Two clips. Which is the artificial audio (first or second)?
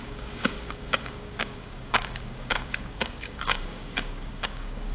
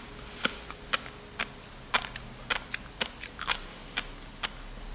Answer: first